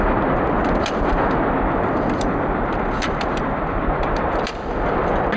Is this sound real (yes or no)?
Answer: yes